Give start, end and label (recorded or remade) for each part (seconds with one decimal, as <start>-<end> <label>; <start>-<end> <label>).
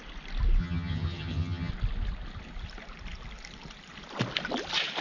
0.0-0.6 recorded; 0.6-1.7 remade; 1.7-5.0 recorded